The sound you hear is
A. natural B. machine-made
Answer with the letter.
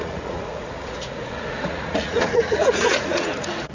B